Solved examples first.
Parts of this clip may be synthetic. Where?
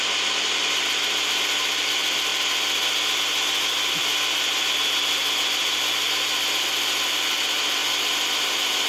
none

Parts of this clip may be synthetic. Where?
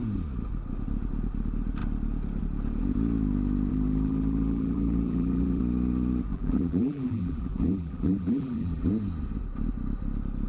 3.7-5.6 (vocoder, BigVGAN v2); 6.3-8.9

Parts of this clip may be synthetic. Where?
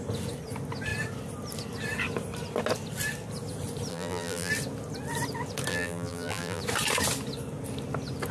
3.9-4.5 (vocoder, BigVGAN v2); 5.7-6.6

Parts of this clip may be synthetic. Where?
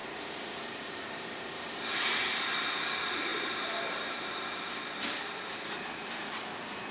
0.0-2.3 (vocoder, BigVGAN v2); 3.3-6.4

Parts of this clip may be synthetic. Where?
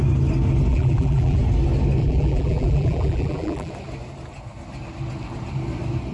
0.7-1.4 (vocoder, BigVGAN v2); 2.0-3.7